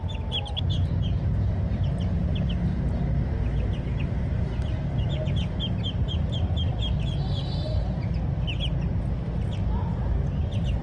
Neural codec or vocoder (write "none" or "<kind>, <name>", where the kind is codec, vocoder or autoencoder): none